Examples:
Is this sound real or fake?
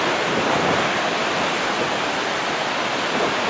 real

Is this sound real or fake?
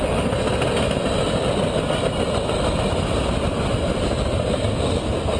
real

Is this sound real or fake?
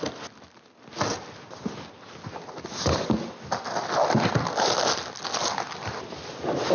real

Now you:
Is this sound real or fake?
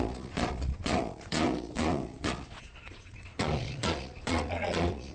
fake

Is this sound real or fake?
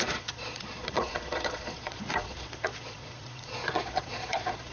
fake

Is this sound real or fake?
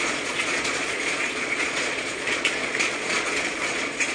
fake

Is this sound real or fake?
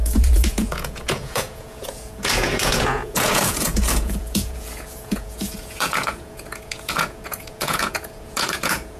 fake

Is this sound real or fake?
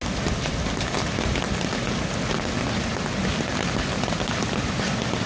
real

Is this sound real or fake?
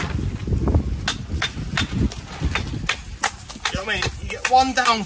real